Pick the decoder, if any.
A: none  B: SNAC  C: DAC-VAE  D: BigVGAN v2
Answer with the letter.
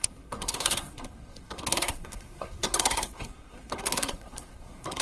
B